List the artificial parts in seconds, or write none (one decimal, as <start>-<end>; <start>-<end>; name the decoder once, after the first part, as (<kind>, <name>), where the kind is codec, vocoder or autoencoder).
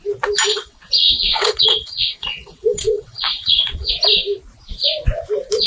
0.5-3.9 (vocoder, WaveNeXt)